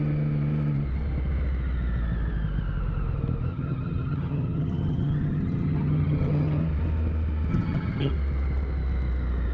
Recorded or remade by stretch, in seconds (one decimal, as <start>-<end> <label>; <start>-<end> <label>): 0.0-3.5 recorded; 3.5-6.6 remade; 6.6-7.5 recorded; 7.5-8.1 remade; 8.1-9.5 recorded